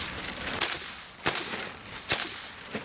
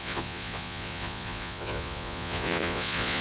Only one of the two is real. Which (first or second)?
first